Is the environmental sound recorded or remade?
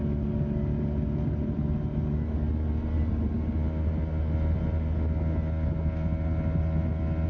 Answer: recorded